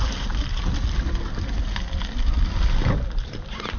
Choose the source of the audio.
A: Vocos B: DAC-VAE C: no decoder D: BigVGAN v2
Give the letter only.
C